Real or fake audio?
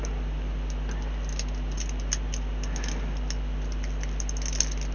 real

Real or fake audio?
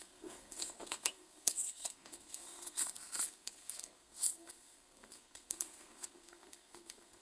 fake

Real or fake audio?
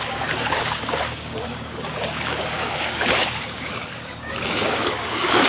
fake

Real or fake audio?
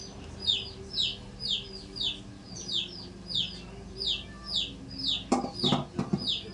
real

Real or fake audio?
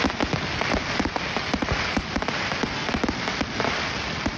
real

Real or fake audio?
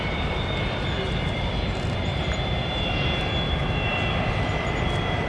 fake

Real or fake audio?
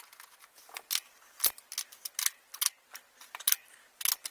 real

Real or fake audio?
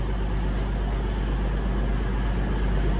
real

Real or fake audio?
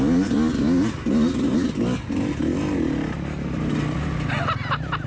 real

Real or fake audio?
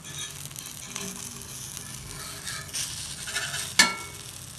real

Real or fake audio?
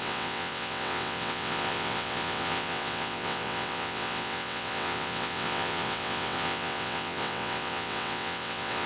fake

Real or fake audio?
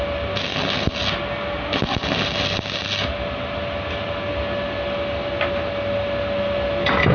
real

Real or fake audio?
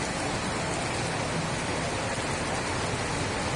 real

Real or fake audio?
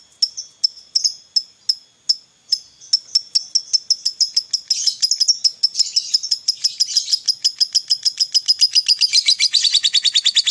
real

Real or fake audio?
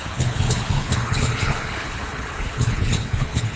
fake